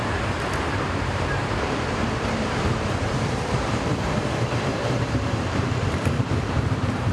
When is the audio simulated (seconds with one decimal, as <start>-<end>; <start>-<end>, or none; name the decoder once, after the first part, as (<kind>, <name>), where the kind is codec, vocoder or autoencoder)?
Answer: 0.0-7.1 (vocoder, BigVGAN v2)